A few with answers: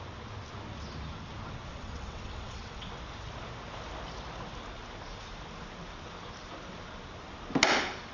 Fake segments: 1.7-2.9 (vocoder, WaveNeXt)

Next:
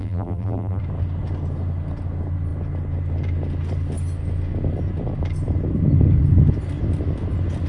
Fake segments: 0.0-0.8 (vocoder, BigVGAN v2)